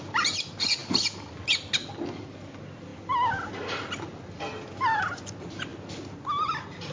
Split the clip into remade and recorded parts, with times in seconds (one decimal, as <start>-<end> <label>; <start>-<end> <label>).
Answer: 0.0-6.9 recorded

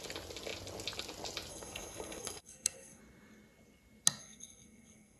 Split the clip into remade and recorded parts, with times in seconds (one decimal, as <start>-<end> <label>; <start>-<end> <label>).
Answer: 0.0-1.5 recorded; 1.5-3.0 remade; 3.0-4.2 recorded; 4.2-5.2 remade